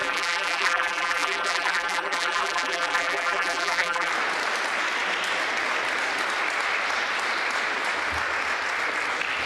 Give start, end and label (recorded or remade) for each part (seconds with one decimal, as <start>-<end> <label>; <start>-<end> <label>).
0.0-4.1 remade; 4.1-9.5 recorded